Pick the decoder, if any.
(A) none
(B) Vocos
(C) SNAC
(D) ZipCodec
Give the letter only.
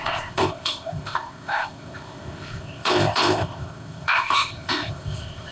D